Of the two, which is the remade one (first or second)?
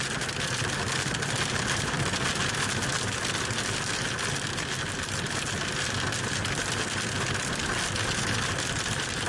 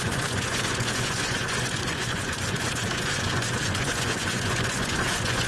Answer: second